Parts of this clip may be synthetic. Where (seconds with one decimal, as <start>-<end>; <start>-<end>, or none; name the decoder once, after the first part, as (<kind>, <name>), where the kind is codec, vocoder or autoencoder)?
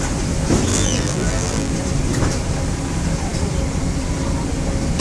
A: 0.7-1.7 (vocoder, BigVGAN v2)